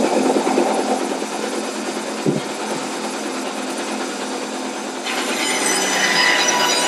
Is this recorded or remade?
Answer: recorded